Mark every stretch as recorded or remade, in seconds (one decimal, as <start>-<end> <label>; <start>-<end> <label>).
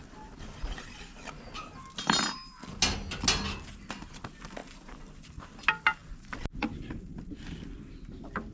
0.0-8.5 recorded